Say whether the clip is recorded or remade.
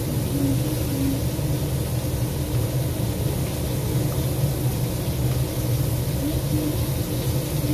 recorded